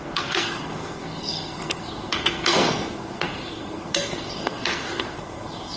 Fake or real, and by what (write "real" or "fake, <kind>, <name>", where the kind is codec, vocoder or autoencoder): fake, codec, SNAC